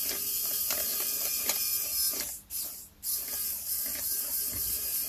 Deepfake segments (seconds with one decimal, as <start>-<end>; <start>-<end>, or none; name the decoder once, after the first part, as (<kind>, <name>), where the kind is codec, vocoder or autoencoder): 0.0-0.9 (vocoder, BigVGAN v2); 4.0-5.1